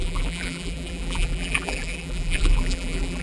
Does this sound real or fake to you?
fake